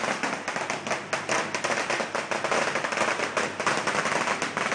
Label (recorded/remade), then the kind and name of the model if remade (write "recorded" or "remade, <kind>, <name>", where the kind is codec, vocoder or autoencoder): recorded